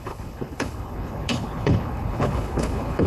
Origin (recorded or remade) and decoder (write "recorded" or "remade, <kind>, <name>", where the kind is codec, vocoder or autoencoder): remade, codec, HILCodec